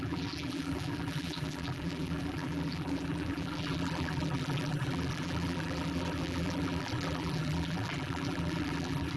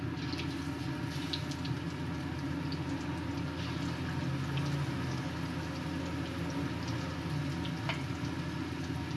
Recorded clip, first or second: second